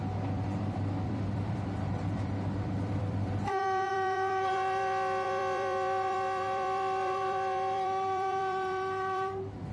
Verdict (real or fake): fake